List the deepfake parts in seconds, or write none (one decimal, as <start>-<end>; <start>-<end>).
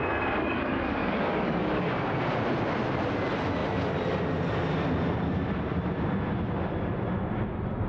0.4-1.9